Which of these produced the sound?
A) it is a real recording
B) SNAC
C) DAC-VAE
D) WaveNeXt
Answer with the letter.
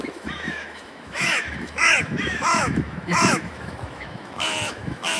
C